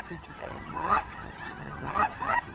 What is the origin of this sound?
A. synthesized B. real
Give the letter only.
A